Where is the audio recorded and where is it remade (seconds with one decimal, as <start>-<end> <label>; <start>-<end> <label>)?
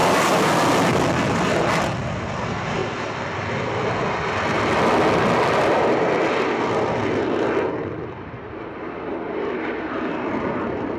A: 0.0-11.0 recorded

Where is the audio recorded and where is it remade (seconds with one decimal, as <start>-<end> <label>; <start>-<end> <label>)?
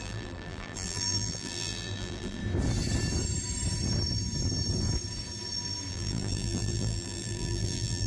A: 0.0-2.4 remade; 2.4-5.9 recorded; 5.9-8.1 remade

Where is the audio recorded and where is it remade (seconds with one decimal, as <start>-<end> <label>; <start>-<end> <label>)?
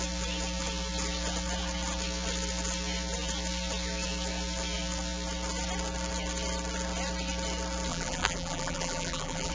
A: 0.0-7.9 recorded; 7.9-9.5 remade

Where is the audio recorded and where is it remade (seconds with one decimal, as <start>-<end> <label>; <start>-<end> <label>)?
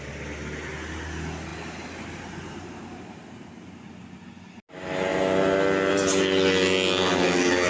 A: 0.0-7.7 recorded